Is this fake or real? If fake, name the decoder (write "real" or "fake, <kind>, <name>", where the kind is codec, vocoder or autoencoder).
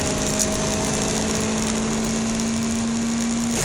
real